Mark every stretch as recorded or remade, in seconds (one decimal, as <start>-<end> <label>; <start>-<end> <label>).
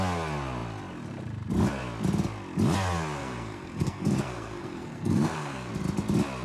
0.0-3.2 recorded; 3.2-5.7 remade; 5.7-6.4 recorded